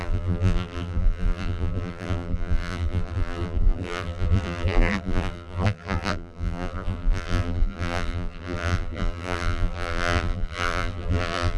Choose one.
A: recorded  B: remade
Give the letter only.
B